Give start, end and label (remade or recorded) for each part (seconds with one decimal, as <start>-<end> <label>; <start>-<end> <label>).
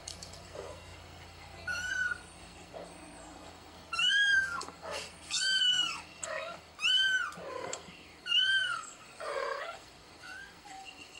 0.0-6.7 remade; 6.7-7.5 recorded; 7.5-11.2 remade